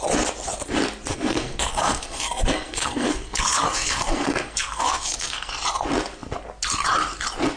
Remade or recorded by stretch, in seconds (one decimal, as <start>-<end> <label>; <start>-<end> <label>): 0.0-1.1 recorded; 1.1-5.5 remade; 5.5-7.6 recorded